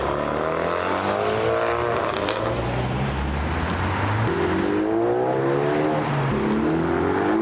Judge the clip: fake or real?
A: real